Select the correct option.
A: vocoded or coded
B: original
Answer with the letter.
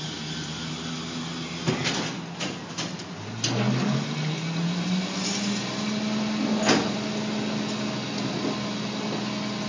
B